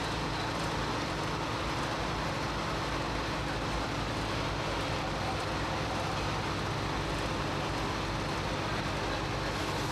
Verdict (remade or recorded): recorded